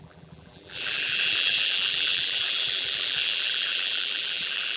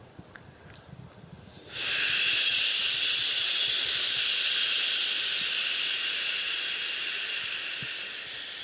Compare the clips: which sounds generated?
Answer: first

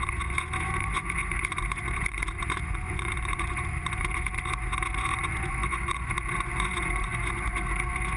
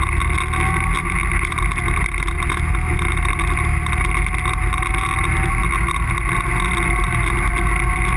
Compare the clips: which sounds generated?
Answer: first